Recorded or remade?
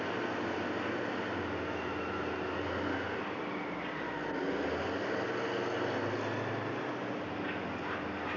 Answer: recorded